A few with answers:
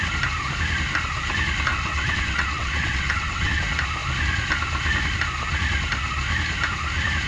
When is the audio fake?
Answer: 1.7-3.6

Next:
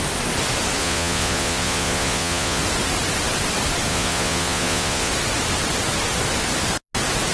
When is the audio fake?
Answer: 0.8-2.6; 3.9-5.1

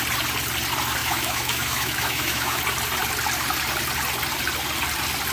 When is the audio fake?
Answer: 1.0-2.6

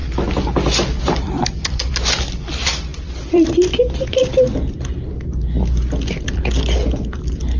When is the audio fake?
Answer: 1.0-4.2

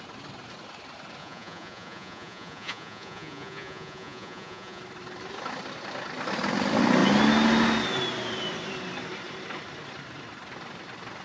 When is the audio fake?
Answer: 1.2-4.8